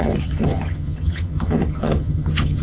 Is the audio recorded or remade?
remade